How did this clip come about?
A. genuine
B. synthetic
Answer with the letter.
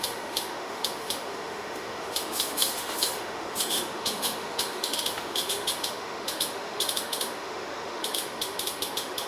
B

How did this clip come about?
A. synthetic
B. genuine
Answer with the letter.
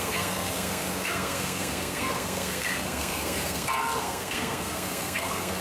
A